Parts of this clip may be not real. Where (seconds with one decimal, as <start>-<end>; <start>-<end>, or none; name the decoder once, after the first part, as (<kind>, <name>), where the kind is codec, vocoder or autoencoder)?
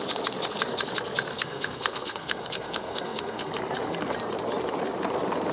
1.3-3.5 (codec, SNAC)